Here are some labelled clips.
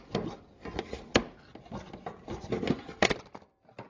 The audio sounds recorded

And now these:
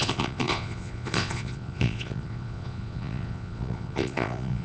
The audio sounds remade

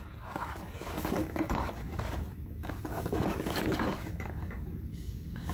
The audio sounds remade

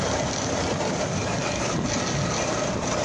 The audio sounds recorded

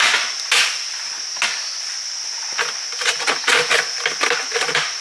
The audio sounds recorded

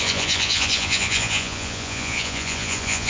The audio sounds remade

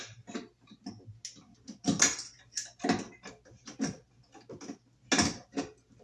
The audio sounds recorded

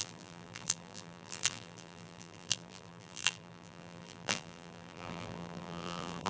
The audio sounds remade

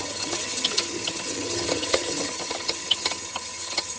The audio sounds remade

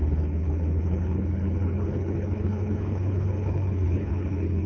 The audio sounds remade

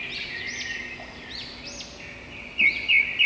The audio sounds recorded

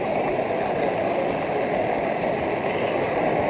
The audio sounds recorded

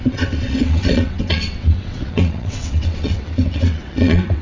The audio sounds remade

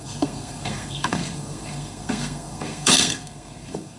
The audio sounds remade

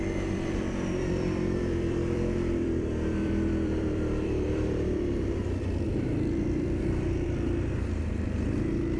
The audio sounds remade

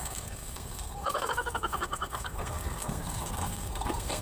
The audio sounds remade